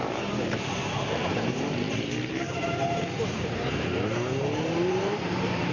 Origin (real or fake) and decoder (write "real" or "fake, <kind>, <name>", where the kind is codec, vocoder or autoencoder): fake, vocoder, BigVGAN v2